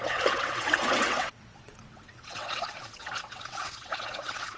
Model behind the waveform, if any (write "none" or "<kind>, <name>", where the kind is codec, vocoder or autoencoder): vocoder, WaveNeXt